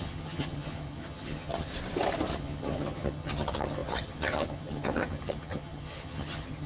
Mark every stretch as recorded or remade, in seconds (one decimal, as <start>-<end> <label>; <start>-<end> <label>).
0.0-1.7 remade; 1.7-2.3 recorded; 2.3-6.7 remade